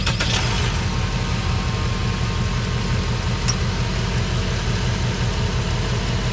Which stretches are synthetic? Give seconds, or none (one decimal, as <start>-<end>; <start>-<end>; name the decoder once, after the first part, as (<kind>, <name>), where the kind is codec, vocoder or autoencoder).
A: none

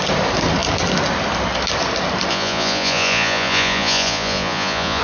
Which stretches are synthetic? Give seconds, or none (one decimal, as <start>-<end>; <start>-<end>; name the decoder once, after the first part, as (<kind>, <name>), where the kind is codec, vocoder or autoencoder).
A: 2.3-5.0 (vocoder, Vocos)

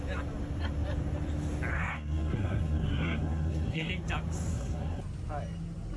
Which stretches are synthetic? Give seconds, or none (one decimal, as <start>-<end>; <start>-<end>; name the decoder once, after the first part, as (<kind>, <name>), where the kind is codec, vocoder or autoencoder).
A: 1.7-3.9 (codec, SNAC); 4.5-5.0